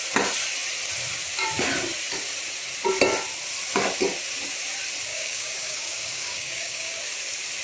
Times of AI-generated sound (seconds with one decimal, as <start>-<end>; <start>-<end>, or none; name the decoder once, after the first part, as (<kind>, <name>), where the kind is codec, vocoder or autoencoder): 5.1-7.0 (codec, DAC)